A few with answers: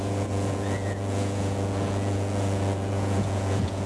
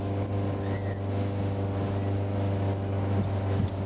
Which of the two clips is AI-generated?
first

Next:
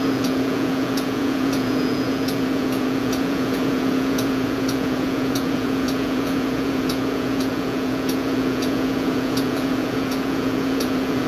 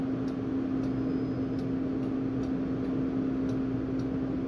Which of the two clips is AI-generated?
first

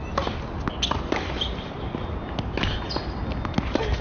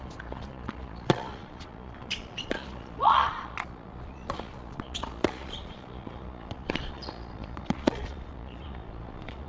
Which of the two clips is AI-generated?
second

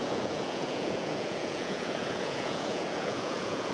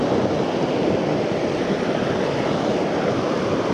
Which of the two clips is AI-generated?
first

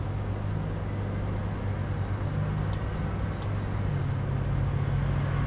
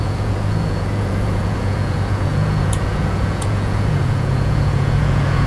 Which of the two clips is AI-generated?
second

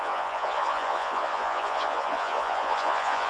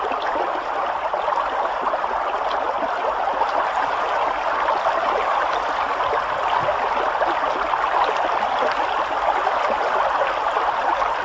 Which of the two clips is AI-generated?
first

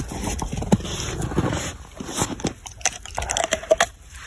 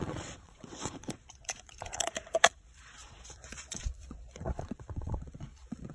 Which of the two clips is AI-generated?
second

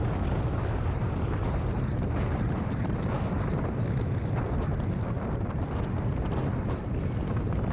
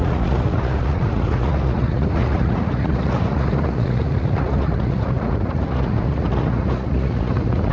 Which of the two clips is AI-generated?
second